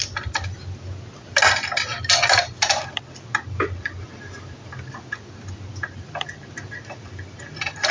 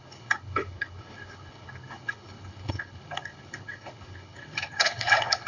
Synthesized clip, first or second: second